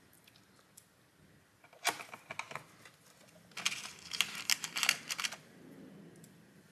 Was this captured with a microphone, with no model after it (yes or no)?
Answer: yes